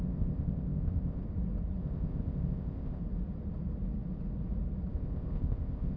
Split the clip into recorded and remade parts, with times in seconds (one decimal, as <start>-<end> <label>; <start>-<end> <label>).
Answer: 0.0-1.2 remade; 1.2-1.8 recorded; 1.8-3.0 remade; 3.0-4.9 recorded; 4.9-6.0 remade